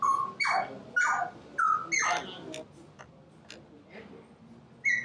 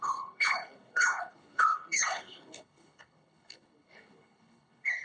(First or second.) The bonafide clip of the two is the first